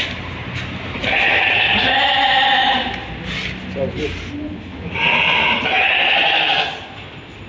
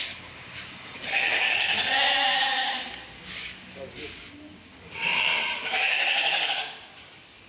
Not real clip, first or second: second